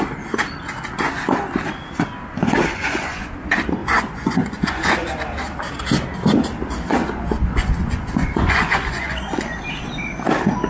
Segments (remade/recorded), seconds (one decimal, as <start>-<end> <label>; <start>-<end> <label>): 0.0-2.4 recorded; 2.4-3.3 remade; 3.3-3.8 recorded; 3.8-5.1 remade; 5.1-7.0 recorded; 7.0-9.6 remade; 9.6-10.7 recorded